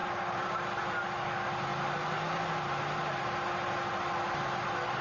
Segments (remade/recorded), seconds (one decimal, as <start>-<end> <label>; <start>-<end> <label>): 0.0-0.6 remade; 0.6-5.0 recorded